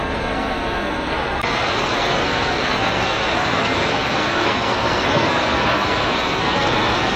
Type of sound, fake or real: fake